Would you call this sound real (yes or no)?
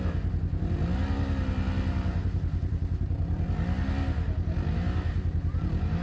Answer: yes